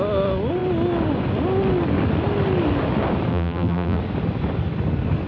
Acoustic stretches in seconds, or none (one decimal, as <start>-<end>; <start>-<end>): 0.0-3.3; 4.0-5.3